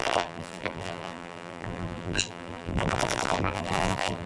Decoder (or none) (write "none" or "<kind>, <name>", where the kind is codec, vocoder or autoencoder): vocoder, BigVGAN v2